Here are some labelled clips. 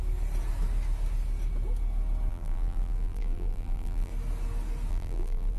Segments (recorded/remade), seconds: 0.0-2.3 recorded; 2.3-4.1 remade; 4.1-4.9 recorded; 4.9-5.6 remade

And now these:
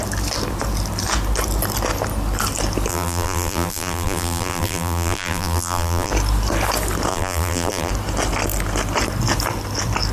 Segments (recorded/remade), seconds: 0.0-2.9 recorded; 2.9-6.1 remade; 6.1-7.1 recorded; 7.1-7.9 remade; 7.9-10.1 recorded

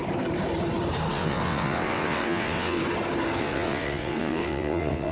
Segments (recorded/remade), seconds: 0.0-1.1 recorded; 1.1-2.8 remade; 2.8-3.4 recorded; 3.4-5.1 remade

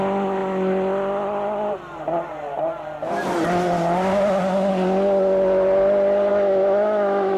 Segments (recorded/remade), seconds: 0.0-6.3 recorded; 6.3-7.4 remade

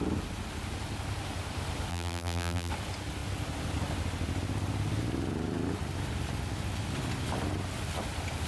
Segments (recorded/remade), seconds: 0.0-1.9 recorded; 1.9-2.7 remade; 2.7-8.5 recorded

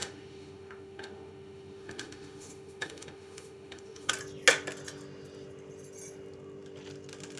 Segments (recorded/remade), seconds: 0.0-4.1 remade; 4.1-7.4 recorded

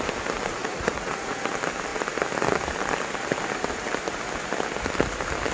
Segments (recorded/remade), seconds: 0.0-0.6 recorded; 0.6-1.4 remade; 1.4-5.5 recorded